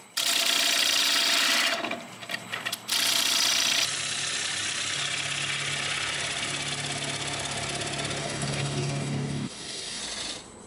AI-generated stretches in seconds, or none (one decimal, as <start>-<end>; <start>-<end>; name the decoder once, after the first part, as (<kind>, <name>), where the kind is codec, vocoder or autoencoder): 8.2-10.0 (codec, DAC)